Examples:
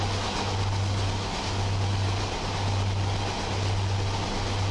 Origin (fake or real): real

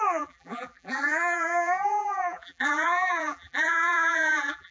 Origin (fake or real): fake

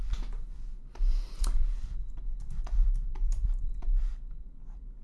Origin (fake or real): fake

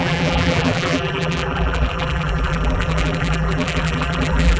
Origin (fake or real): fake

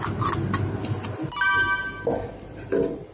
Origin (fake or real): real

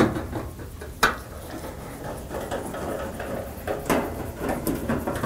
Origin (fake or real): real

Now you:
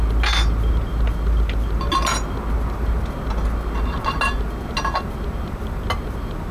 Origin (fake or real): real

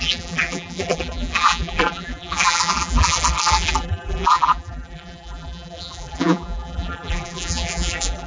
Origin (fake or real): fake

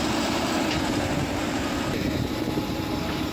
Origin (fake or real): fake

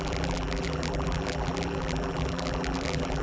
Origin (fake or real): fake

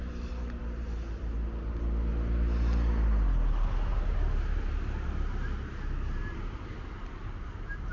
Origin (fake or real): real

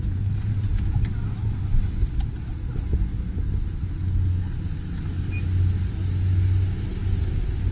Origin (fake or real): real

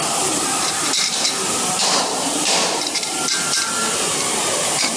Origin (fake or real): fake